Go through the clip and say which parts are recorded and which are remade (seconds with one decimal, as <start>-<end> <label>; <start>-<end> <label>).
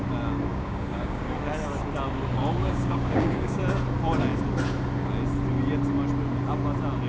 0.0-0.5 recorded; 0.5-1.2 remade; 1.2-2.6 recorded; 2.6-3.6 remade; 3.6-7.1 recorded